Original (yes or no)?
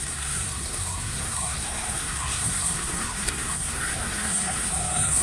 no